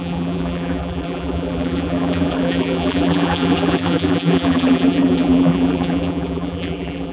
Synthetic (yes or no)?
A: yes